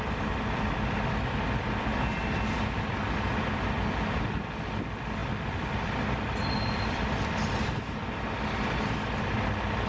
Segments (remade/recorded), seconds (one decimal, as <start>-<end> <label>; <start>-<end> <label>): 0.0-9.9 recorded